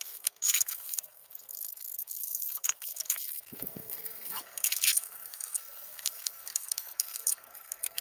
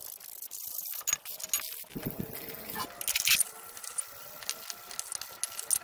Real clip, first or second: second